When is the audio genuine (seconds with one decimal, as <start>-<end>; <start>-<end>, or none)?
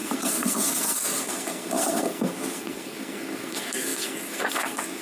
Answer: none